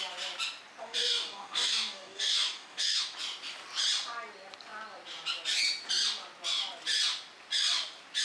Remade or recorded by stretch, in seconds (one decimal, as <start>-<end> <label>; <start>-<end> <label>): 0.0-0.8 recorded; 0.8-3.0 remade; 3.0-8.2 recorded